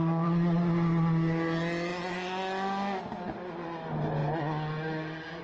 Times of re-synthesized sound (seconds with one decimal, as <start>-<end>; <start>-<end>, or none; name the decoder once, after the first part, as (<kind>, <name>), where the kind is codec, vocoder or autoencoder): none